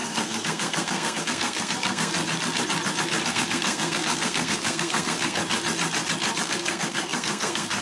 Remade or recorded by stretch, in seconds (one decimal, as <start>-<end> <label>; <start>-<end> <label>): 0.0-2.1 remade; 2.1-3.3 recorded; 3.3-5.4 remade; 5.4-6.4 recorded; 6.4-7.8 remade